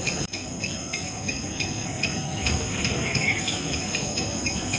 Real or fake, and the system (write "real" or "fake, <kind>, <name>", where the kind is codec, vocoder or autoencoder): fake, codec, SNAC